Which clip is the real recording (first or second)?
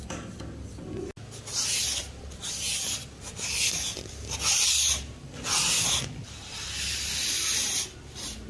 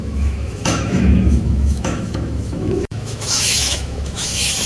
first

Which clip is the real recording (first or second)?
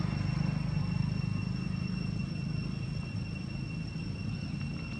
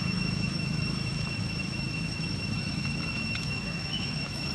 first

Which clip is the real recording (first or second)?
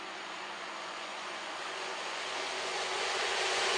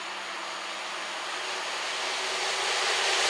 second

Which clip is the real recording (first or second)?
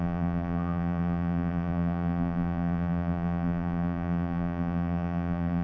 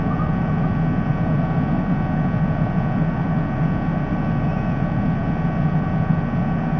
second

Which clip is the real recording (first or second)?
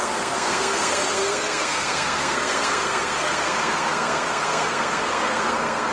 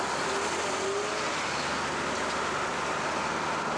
second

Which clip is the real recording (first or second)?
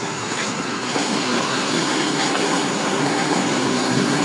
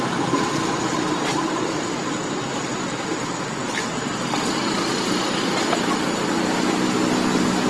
second